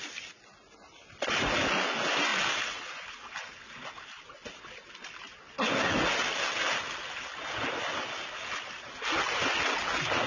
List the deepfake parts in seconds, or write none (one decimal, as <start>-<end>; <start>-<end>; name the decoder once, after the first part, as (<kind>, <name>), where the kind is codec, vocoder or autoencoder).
none